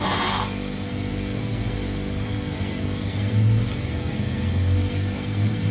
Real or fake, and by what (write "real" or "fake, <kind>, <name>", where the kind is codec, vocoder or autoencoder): fake, codec, SNAC